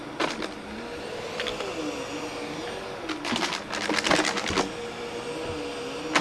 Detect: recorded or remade recorded